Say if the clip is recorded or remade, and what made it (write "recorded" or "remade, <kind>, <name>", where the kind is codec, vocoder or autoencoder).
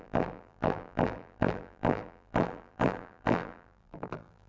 remade, vocoder, BigVGAN v2